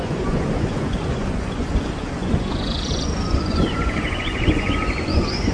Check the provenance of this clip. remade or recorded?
remade